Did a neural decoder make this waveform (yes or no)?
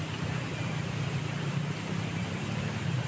yes